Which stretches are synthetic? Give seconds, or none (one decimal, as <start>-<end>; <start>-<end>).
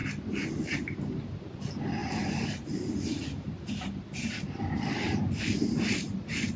1.2-6.6